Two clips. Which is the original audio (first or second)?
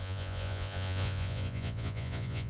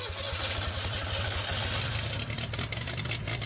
second